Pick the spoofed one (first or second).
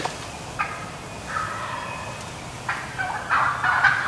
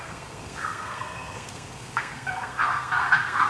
second